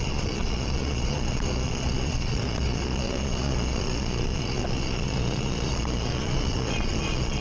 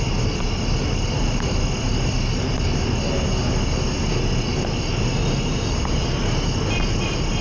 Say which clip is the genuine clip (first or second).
second